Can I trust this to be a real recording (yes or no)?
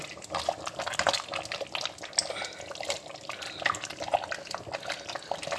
yes